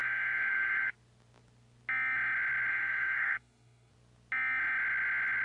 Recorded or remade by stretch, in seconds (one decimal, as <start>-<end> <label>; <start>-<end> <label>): 0.0-0.9 remade; 0.9-2.7 recorded; 2.7-3.9 remade; 3.9-5.4 recorded